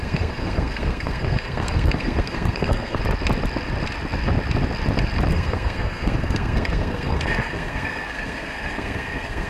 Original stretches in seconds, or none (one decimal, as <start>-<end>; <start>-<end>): 3.0-5.3

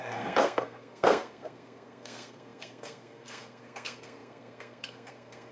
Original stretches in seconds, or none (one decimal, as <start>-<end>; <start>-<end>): none

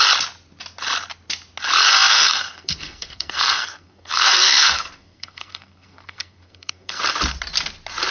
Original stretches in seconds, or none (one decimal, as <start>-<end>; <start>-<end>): 0.0-2.1; 7.0-8.1

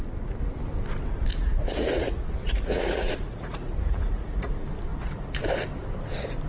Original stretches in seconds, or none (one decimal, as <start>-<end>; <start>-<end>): 0.0-1.3; 4.5-4.9; 5.4-6.5

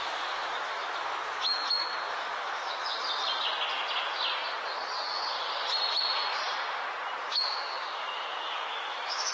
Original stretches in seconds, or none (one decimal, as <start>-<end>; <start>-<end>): 3.0-7.2